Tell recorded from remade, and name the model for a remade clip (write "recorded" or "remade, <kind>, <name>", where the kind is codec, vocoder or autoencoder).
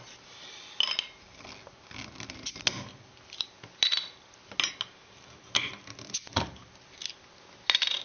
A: recorded